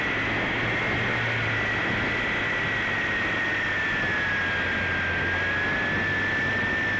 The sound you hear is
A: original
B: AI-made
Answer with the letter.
A